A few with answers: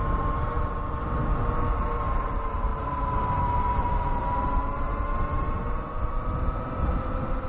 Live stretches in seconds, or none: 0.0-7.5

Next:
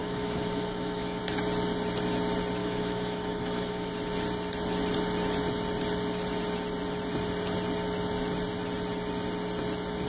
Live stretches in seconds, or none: 1.2-2.6; 3.9-10.1

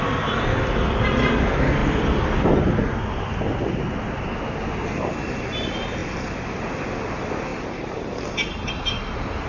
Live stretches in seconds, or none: 0.0-9.5

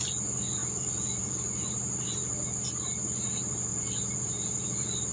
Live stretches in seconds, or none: 0.0-0.6; 2.3-3.7

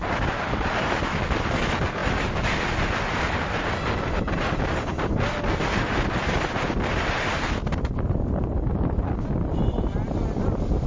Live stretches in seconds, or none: 0.0-10.9

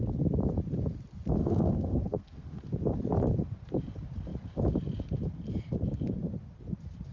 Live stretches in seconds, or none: 0.0-1.4; 2.6-7.1